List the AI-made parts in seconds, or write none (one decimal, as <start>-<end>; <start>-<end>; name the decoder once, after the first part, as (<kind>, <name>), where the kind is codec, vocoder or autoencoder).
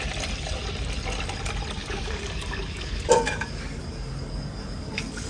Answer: 1.8-5.3 (codec, DAC)